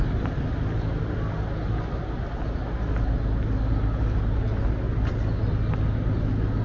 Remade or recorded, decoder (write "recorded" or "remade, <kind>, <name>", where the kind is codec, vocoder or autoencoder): recorded